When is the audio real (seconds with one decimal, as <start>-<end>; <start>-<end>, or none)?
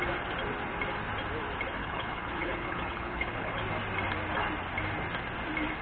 0.0-1.8; 3.6-5.8